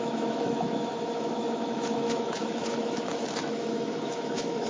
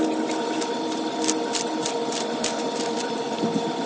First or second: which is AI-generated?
first